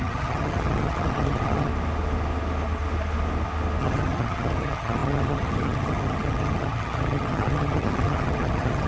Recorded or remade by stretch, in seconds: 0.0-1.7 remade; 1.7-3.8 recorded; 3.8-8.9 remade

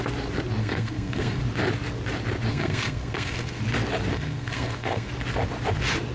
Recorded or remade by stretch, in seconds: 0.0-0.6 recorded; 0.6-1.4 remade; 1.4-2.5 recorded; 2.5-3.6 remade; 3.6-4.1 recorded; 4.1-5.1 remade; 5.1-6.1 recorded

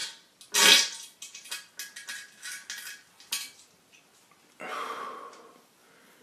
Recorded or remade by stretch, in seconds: 0.0-6.2 recorded

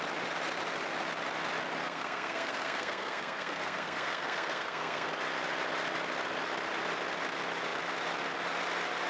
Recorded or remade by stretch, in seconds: 0.0-1.8 recorded; 1.8-5.1 remade; 5.1-9.1 recorded

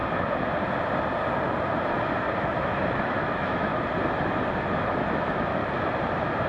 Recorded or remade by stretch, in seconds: 0.0-2.4 recorded; 2.4-3.7 remade; 3.7-4.8 recorded; 4.8-5.6 remade; 5.6-6.5 recorded

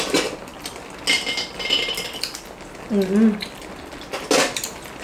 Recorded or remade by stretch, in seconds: 0.0-5.0 recorded